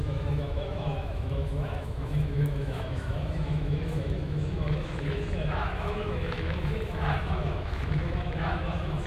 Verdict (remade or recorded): remade